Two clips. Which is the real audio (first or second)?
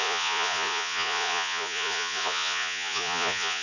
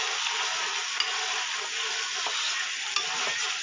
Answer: second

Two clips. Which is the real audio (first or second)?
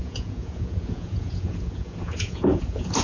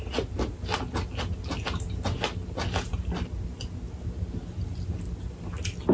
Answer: second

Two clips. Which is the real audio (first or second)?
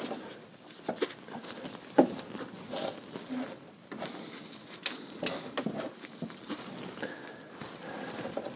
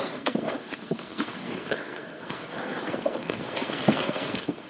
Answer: first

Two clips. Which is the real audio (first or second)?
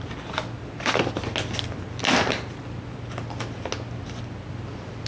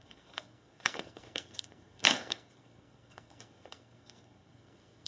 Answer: first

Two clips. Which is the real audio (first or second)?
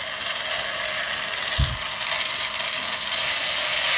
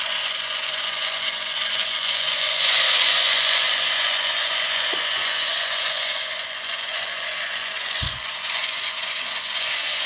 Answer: first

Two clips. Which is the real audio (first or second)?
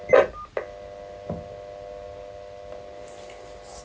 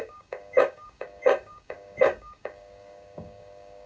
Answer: first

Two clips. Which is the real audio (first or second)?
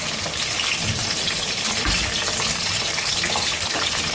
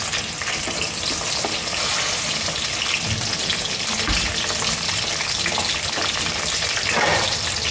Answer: second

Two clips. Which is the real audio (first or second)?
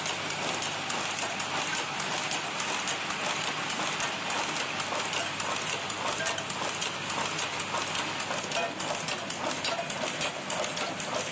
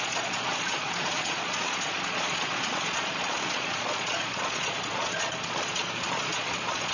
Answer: first